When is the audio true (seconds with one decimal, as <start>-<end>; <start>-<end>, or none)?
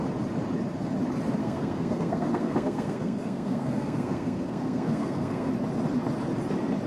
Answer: 0.0-1.4; 5.5-6.9